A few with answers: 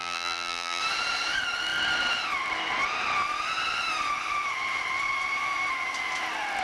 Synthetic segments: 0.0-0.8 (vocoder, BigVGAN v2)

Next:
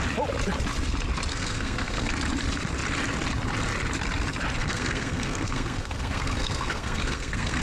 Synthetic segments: 1.3-2.1 (codec, SNAC); 4.6-7.6

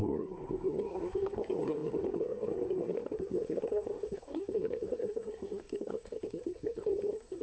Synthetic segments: 0.0-7.4 (codec, SNAC)

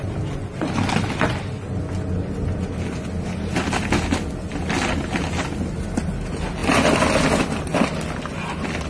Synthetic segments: none